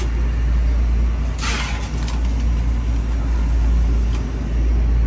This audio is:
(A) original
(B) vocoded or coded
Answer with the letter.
A